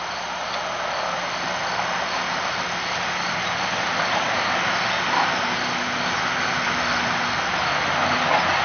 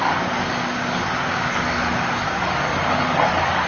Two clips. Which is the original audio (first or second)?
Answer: first